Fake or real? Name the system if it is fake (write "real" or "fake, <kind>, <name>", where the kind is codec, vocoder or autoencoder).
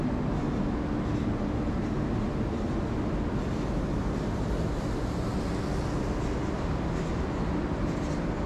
real